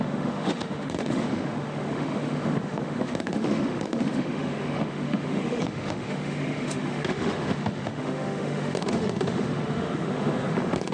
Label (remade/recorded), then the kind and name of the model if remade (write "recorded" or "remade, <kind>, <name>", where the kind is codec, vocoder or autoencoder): remade, autoencoder, DAC-VAE